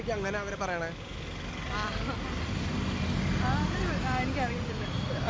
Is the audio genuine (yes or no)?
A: yes